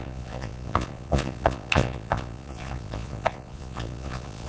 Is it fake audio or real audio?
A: fake